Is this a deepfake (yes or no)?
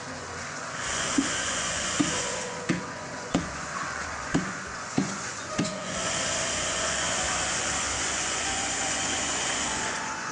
yes